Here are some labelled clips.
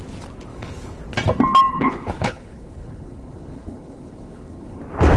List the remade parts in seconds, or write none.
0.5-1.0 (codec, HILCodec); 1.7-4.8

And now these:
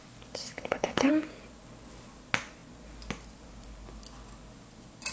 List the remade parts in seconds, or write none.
0.4-1.1 (codec, HILCodec)

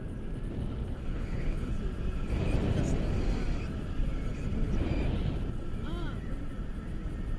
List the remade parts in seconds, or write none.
0.8-1.7 (codec, HILCodec)

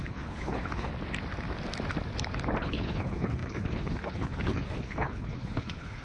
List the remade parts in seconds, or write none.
0.0-0.9 (codec, HILCodec); 2.6-6.0

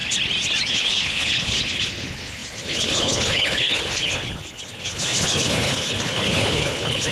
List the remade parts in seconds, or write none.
0.7-7.1 (codec, HILCodec)

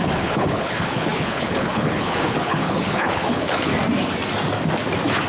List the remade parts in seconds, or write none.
0.0-3.7 (codec, HILCodec)

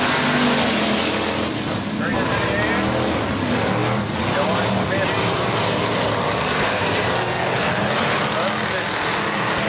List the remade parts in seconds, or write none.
7.4-8.2 (codec, HILCodec)